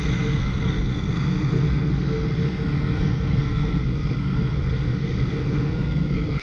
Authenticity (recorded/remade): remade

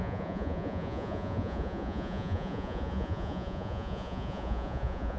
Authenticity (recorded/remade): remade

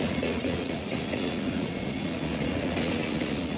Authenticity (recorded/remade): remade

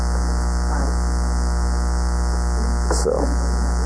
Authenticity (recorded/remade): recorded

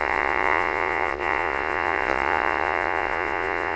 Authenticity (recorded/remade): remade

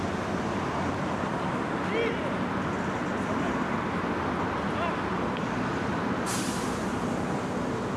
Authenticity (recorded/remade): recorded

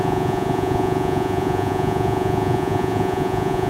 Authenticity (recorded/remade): remade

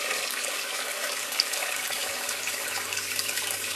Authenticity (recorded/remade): remade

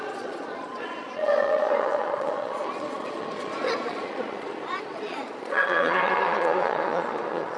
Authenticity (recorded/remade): remade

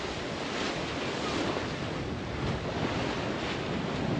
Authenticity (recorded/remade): recorded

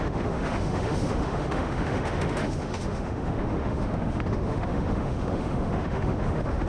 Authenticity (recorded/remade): remade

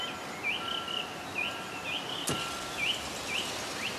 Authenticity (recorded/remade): recorded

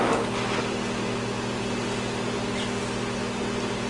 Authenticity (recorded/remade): recorded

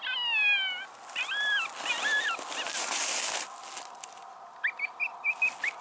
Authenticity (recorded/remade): recorded